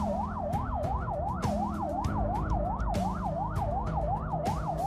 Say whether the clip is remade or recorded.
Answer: remade